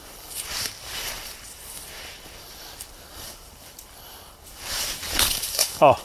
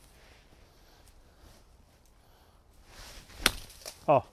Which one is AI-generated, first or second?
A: first